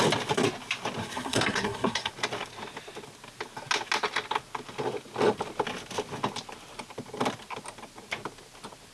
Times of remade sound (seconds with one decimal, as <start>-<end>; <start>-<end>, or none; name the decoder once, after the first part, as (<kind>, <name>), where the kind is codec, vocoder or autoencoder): 1.0-2.1 (codec, SNAC)